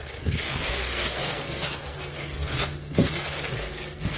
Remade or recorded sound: remade